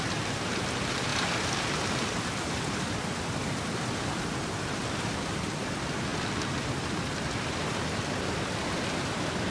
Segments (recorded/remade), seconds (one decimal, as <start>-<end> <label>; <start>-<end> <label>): 0.0-6.1 remade; 6.1-6.6 recorded; 6.6-9.5 remade